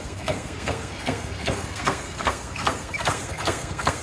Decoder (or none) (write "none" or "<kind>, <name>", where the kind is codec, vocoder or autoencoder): codec, SNAC